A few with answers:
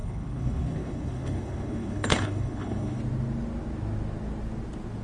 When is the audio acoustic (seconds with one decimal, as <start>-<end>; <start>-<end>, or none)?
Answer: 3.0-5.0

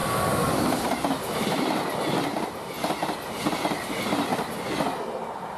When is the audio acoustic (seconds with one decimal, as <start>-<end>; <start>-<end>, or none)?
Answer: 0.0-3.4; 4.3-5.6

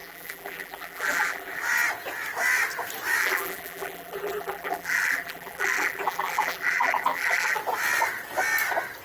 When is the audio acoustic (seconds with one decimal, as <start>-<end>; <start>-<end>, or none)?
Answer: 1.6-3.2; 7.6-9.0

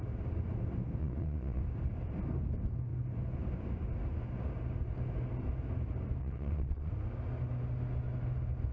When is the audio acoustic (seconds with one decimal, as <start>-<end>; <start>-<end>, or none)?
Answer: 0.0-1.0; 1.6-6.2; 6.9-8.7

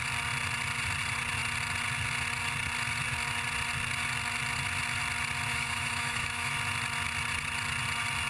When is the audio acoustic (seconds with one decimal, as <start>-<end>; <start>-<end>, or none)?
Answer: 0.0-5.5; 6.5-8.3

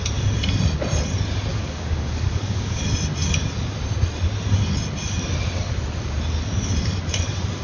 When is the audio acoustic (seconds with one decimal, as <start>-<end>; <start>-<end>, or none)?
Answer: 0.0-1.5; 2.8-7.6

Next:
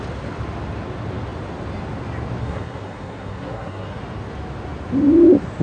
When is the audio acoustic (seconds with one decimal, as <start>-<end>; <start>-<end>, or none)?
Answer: 0.0-2.4; 4.0-5.6